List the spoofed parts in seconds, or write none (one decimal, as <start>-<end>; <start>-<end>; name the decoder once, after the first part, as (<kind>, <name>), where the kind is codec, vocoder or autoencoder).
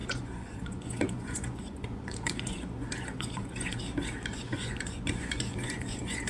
0.0-3.8 (vocoder, Vocos); 4.3-6.3